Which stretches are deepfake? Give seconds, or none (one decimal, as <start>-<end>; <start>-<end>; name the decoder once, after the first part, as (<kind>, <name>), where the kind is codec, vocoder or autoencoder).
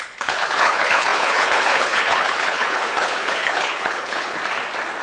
0.0-4.4 (codec, HILCodec)